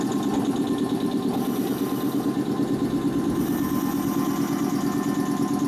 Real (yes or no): yes